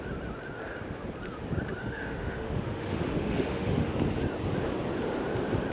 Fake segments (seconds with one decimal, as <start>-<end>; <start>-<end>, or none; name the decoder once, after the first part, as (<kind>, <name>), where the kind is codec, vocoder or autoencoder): 1.8-3.9 (autoencoder, DAC-VAE)